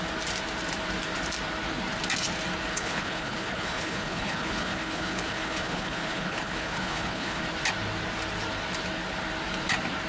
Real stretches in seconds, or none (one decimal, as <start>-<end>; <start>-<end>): 0.0-2.7; 7.4-10.1